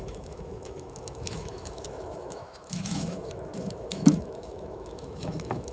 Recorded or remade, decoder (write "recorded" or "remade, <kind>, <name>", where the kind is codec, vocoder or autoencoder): remade, autoencoder, DAC-VAE